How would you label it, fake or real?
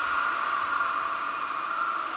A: real